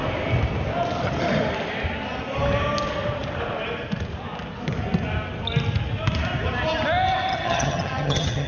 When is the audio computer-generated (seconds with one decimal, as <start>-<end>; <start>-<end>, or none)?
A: 7.3-8.5